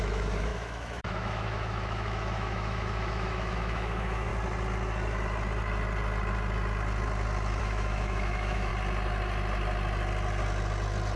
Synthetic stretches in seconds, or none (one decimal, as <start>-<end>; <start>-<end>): 0.0-4.3; 7.6-8.7